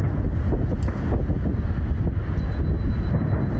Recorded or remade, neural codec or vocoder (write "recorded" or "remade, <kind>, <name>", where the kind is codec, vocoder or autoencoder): recorded